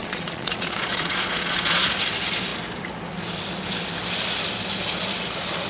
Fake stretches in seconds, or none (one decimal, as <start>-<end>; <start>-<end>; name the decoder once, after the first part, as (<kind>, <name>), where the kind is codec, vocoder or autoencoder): 0.0-1.9 (vocoder, Vocos)